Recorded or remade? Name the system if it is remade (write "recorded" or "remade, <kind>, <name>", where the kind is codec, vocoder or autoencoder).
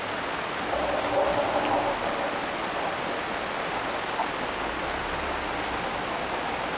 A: recorded